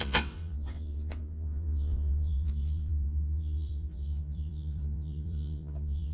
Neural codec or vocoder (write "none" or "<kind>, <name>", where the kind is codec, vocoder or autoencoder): vocoder, WaveNeXt